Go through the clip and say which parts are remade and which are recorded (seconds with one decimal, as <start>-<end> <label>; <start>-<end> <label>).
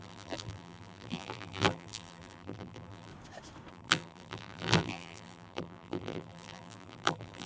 0.0-3.1 remade; 3.1-3.7 recorded; 3.7-7.5 remade